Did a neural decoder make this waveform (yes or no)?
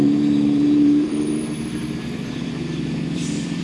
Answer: yes